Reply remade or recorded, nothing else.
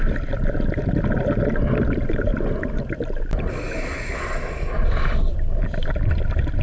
recorded